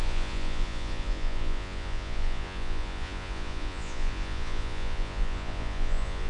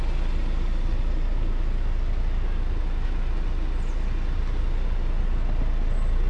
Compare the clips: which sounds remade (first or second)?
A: first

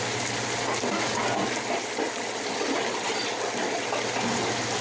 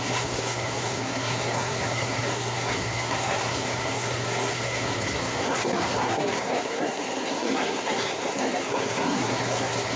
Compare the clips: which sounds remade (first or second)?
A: second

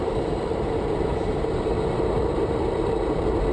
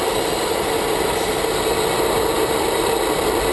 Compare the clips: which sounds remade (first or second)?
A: first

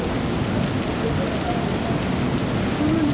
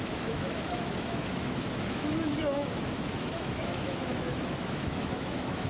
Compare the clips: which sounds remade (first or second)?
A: second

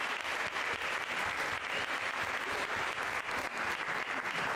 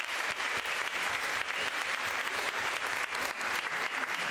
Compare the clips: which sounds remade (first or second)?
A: second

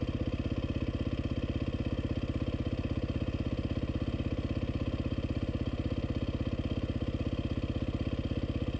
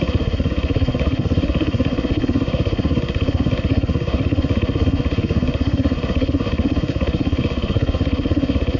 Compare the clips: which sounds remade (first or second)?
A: second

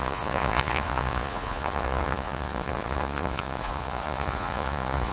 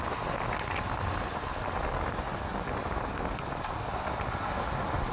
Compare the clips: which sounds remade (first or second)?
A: first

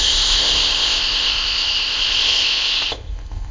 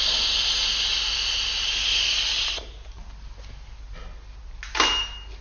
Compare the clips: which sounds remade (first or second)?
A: first